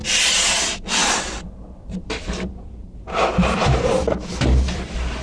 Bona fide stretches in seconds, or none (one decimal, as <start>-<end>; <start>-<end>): 0.0-1.0; 2.3-2.8; 3.8-5.2